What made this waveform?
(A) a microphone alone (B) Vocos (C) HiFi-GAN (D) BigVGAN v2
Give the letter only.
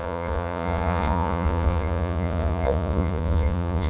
B